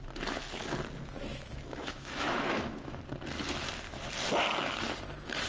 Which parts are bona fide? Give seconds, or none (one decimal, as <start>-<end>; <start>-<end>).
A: 0.0-1.3; 3.0-5.5